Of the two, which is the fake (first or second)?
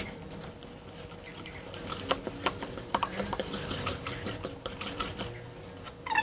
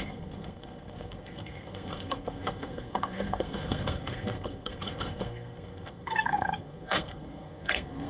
second